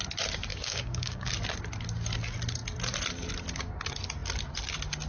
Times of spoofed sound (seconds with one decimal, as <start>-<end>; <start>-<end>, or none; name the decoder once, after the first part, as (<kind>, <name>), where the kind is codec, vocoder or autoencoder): 0.5-1.3 (codec, DAC)